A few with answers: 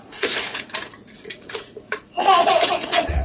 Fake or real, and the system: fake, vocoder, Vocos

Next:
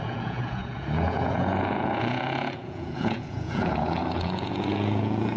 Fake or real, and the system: fake, vocoder, Vocos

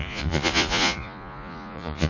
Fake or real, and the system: fake, vocoder, Vocos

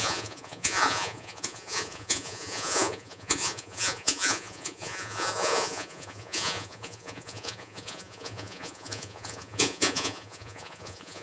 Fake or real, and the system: fake, vocoder, Vocos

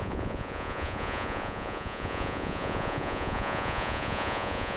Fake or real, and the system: fake, vocoder, Vocos